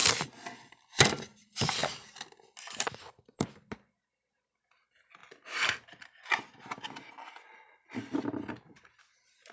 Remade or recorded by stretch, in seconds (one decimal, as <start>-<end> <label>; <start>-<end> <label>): 0.0-9.5 recorded